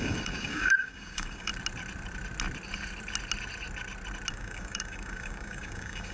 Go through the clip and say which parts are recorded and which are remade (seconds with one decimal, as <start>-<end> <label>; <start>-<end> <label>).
0.0-1.5 remade; 1.5-4.3 recorded; 4.3-6.1 remade